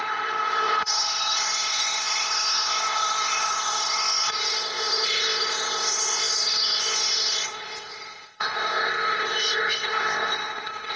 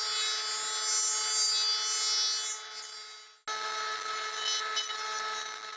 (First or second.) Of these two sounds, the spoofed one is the first